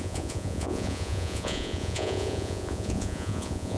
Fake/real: fake